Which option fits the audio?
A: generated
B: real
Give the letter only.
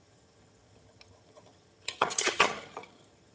A